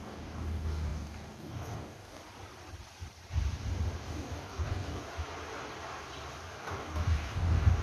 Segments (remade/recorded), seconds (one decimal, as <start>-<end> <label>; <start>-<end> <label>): 0.0-2.2 remade; 2.2-4.0 recorded; 4.0-5.0 remade; 5.0-6.6 recorded; 6.6-7.8 remade